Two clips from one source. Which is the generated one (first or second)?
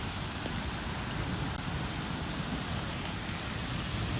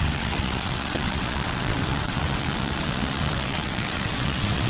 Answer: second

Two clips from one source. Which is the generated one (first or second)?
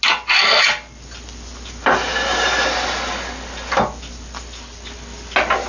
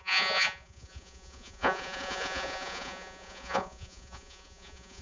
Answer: second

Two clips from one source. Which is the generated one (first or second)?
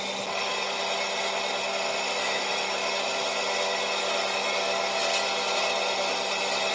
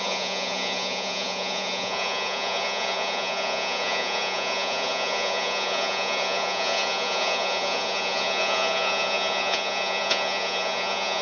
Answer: second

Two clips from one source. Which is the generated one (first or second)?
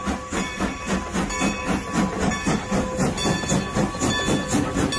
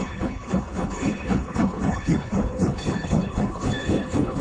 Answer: second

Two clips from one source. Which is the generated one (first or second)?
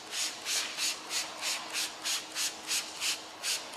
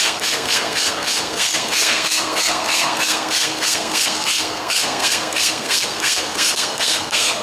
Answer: second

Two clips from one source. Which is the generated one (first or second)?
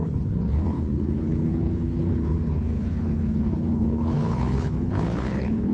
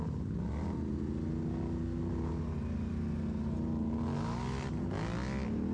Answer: first